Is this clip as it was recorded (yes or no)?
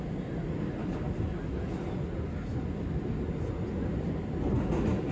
yes